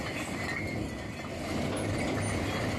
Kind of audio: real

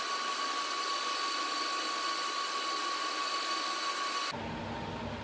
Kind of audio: real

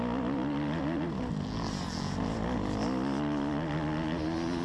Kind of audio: real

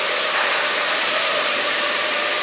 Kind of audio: real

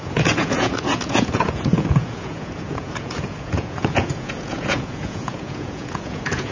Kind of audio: fake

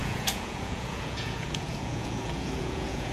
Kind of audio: fake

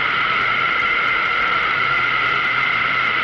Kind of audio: fake